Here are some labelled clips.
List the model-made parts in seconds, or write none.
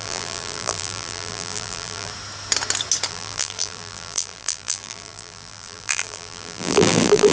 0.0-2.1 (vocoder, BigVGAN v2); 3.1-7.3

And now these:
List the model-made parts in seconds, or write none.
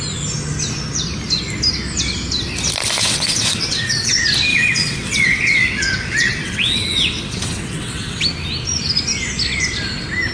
3.0-4.1 (vocoder, WaveNeXt); 4.5-8.2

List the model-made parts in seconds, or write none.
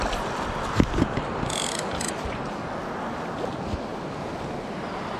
none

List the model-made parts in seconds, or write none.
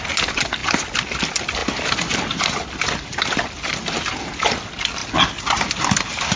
none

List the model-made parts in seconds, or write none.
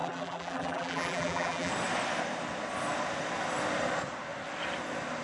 0.0-1.7 (vocoder, BigVGAN v2)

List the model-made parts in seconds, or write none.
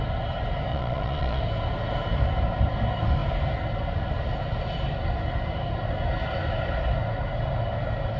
0.7-1.4 (vocoder, Vocos)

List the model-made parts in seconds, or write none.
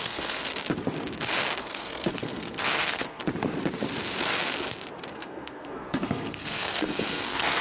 0.0-0.5 (codec, SNAC); 1.6-3.2; 5.1-7.6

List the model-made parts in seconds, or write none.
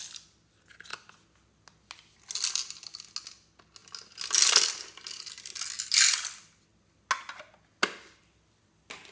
none